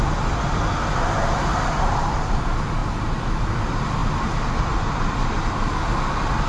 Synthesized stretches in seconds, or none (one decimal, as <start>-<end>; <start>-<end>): 1.5-2.4